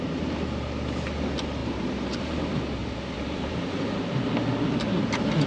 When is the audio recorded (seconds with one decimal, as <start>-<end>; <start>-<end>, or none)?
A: 0.0-1.6; 2.2-2.8; 3.6-5.5